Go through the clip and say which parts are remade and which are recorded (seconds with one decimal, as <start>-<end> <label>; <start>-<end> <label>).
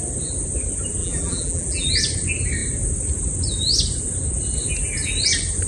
0.0-1.0 recorded; 1.0-1.9 remade; 1.9-5.7 recorded